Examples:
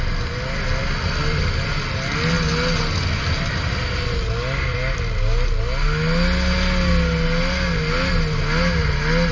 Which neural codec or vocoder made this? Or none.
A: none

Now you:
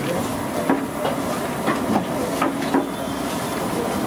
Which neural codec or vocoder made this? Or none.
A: none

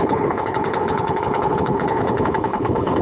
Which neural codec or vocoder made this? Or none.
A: codec, HILCodec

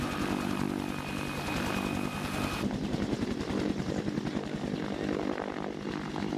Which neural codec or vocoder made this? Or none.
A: none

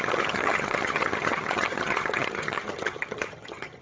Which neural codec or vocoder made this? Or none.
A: vocoder, HiFi-GAN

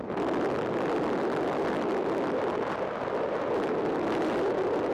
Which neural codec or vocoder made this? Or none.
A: none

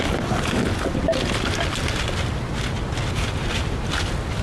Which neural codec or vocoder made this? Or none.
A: none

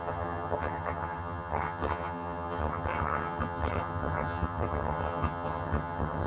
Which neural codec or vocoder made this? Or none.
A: vocoder, HiFi-GAN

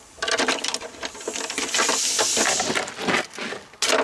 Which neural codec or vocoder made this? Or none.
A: none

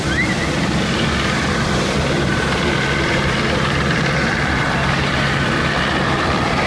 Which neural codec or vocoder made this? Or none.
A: vocoder, BigVGAN v2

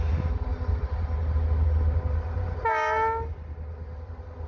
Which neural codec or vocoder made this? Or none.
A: none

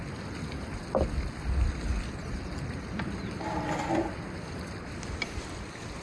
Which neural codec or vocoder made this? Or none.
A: none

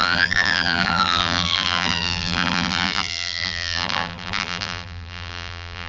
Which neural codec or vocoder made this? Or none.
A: vocoder, BigVGAN v2